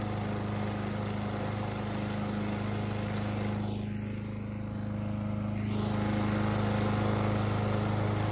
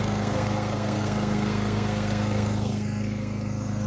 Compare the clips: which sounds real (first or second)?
first